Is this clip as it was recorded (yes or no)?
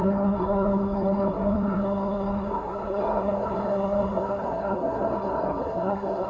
no